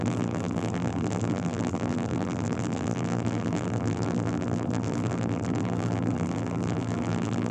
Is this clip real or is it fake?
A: fake